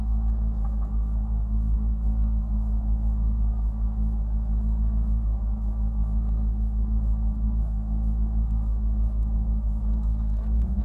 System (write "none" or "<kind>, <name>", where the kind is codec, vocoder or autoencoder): codec, SNAC